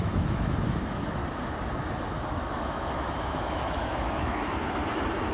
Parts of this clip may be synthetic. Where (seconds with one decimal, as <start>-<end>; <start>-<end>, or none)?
0.0-1.2; 2.3-4.8